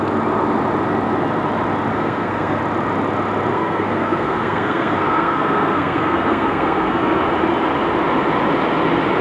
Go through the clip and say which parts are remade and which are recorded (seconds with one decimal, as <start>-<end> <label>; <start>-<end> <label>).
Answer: 0.0-1.9 recorded; 1.9-2.6 remade; 2.6-3.5 recorded; 3.5-7.2 remade; 7.2-9.2 recorded